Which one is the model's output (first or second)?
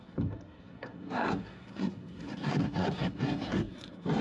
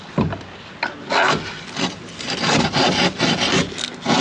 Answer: first